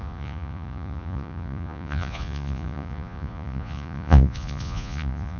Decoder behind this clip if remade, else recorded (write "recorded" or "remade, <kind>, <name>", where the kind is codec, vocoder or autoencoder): remade, vocoder, Vocos